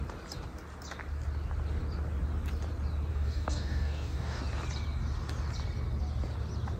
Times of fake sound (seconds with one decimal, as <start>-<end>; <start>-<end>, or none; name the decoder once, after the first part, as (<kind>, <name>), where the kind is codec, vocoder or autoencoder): 3.1-4.4 (codec, DAC)

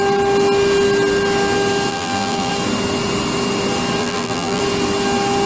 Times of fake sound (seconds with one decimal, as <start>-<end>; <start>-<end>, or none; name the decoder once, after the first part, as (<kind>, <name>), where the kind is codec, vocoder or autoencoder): 1.9-2.5 (vocoder, BigVGAN v2); 4.0-4.6